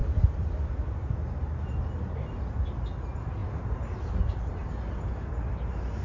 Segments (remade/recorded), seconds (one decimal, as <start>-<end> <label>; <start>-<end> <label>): 0.0-0.6 remade; 0.6-6.0 recorded